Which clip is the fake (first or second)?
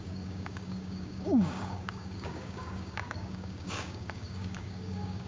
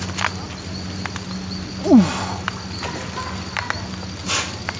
first